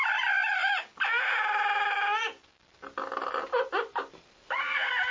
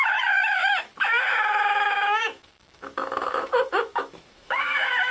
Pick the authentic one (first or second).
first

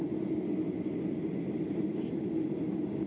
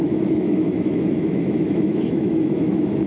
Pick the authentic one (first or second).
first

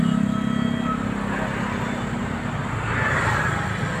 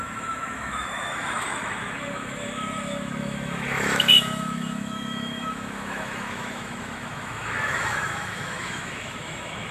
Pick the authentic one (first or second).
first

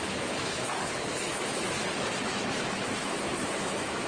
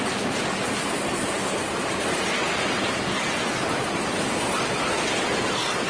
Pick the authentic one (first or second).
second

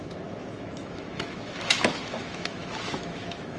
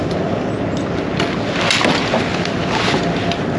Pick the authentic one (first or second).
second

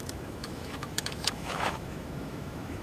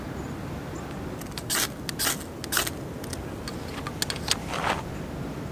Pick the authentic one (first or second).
second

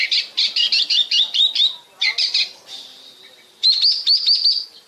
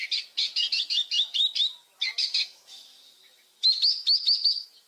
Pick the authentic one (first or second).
first